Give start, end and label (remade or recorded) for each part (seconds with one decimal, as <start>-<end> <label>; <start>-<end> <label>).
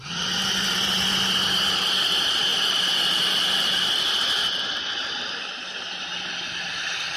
0.0-2.5 recorded; 2.5-3.7 remade; 3.7-7.2 recorded